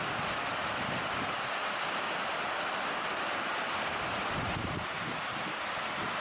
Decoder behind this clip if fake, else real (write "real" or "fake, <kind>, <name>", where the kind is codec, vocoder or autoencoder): real